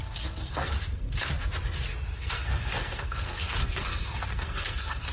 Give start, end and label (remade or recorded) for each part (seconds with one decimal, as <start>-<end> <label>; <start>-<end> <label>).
0.0-0.4 recorded; 0.4-1.2 remade; 1.2-2.1 recorded; 2.1-5.1 remade